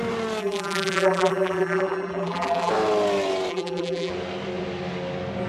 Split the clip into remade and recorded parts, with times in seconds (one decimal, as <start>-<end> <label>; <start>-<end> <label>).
0.0-0.4 recorded; 0.4-2.7 remade; 2.7-3.5 recorded; 3.5-4.1 remade; 4.1-5.5 recorded